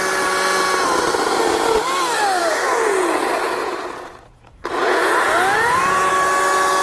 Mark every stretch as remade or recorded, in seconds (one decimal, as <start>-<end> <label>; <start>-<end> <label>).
0.0-2.4 recorded; 2.4-6.1 remade; 6.1-6.8 recorded